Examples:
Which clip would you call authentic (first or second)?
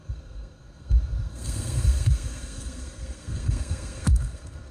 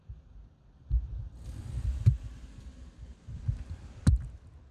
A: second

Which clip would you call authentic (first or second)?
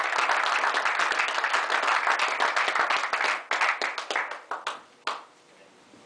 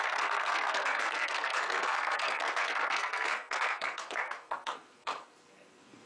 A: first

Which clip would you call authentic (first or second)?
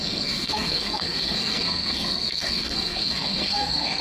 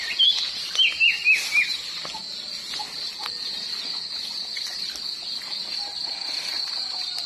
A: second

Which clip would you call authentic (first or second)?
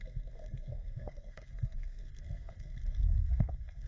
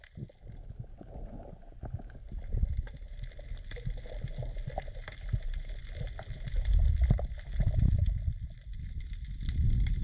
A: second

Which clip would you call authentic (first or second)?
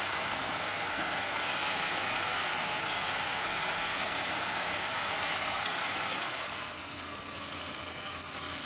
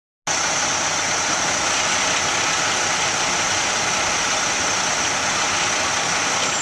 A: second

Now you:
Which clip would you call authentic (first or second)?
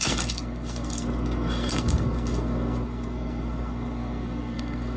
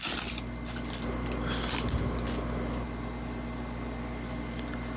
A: second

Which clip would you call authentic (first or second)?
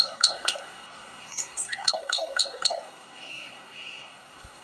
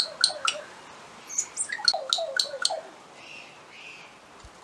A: second